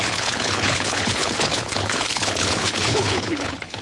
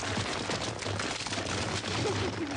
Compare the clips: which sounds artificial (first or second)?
first